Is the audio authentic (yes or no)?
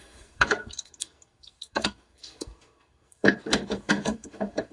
no